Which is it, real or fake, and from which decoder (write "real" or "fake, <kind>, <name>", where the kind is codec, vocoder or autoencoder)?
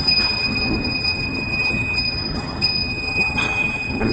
fake, vocoder, HiFi-GAN